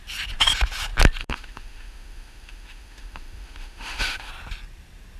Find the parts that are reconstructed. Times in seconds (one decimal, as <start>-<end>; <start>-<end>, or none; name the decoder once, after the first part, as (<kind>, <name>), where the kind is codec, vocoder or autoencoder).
1.2-4.3 (autoencoder, DAC-VAE)